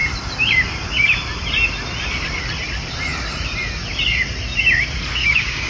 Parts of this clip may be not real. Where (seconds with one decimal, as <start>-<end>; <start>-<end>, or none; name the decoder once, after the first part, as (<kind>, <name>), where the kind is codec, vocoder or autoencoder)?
5.2-5.7 (codec, DAC)